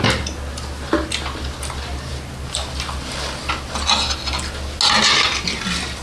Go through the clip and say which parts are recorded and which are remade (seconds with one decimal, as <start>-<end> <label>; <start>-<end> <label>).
0.0-6.0 recorded